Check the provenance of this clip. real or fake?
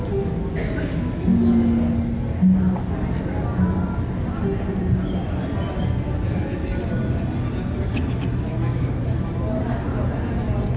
real